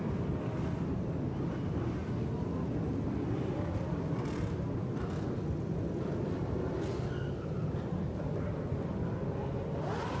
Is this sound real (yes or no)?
yes